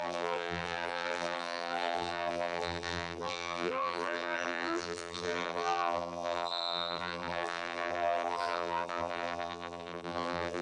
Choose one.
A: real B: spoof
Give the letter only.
B